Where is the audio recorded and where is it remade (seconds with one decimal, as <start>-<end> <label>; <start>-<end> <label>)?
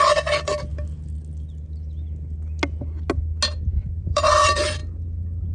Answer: 0.0-0.7 remade; 0.7-4.0 recorded; 4.0-4.8 remade; 4.8-5.5 recorded